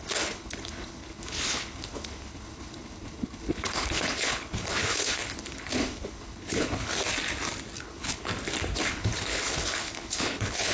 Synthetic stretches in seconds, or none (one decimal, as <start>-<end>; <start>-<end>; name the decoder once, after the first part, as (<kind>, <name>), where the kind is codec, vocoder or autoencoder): 0.0-6.9 (codec, HILCodec); 7.8-8.3; 8.9-10.7